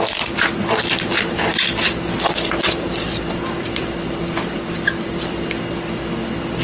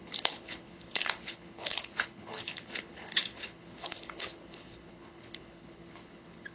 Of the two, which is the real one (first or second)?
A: first